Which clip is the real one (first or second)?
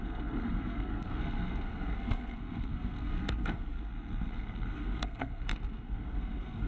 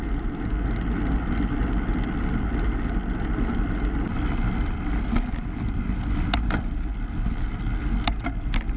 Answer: second